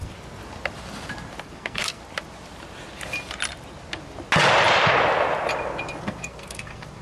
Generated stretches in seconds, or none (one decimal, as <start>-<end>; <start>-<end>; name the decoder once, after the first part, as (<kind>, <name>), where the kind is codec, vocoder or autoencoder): 0.0-0.4 (codec, SNAC); 1.4-2.0; 6.0-7.0